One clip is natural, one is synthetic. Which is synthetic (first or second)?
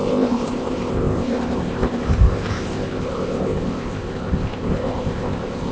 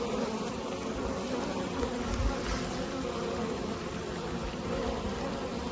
first